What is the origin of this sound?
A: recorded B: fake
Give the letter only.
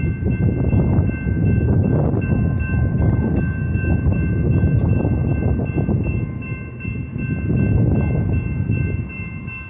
A